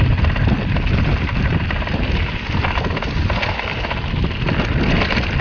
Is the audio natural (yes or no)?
yes